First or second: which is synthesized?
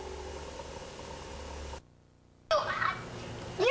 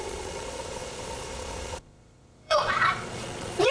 second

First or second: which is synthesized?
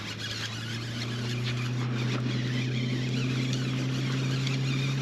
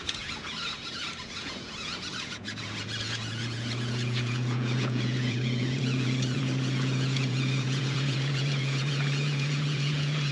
second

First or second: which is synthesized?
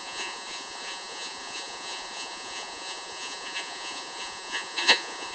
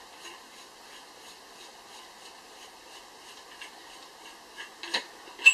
first